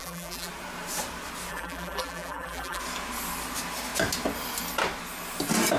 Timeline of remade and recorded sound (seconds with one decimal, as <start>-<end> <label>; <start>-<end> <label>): 0.0-0.5 remade; 0.5-1.5 recorded; 1.5-2.8 remade; 2.8-5.8 recorded